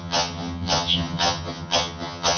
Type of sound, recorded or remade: remade